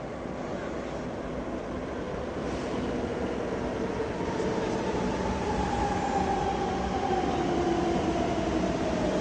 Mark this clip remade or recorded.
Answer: recorded